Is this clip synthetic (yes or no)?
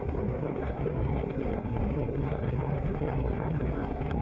yes